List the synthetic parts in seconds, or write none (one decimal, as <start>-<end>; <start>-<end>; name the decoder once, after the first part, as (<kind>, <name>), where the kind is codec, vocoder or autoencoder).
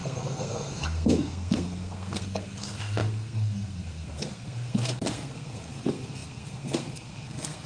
0.0-7.7 (codec, SNAC)